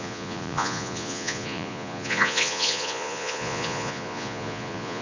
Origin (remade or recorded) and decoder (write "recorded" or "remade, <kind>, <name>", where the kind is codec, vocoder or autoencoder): remade, vocoder, Vocos